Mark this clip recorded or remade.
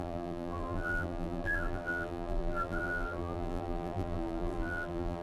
remade